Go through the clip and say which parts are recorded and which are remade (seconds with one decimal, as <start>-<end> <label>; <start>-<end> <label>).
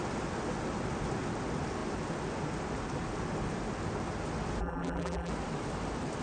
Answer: 0.0-4.6 recorded; 4.6-5.3 remade; 5.3-6.2 recorded